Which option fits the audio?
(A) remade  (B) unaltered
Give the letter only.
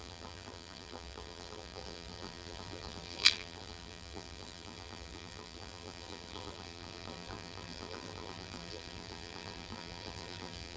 A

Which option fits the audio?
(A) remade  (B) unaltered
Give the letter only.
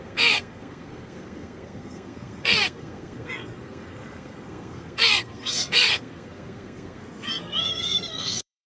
A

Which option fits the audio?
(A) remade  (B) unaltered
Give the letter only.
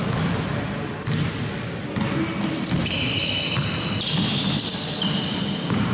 B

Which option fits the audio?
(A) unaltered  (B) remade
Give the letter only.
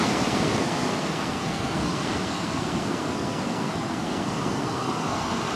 B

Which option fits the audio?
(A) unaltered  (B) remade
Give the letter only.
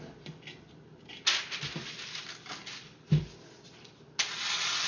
A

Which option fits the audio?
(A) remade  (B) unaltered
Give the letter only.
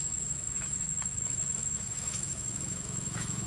A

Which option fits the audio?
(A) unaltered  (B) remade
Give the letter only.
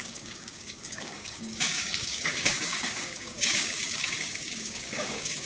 B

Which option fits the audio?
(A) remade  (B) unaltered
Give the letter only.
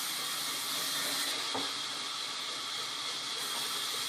B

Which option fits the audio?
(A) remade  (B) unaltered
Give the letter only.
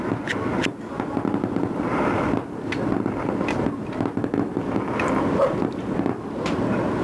B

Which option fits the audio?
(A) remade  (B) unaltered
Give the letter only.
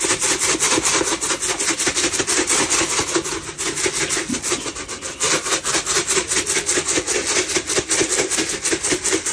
B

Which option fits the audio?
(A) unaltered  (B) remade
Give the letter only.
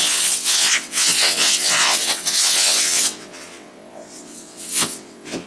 B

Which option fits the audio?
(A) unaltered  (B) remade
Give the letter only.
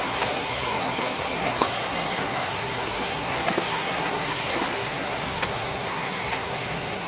B